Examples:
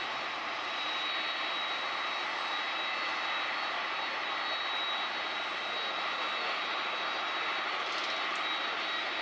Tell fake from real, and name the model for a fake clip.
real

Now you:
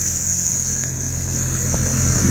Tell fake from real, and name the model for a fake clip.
fake, codec, SNAC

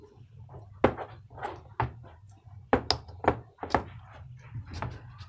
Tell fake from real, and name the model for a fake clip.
real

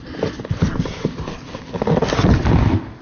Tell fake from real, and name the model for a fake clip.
real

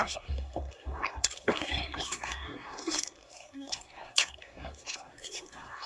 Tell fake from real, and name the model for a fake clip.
fake, codec, SNAC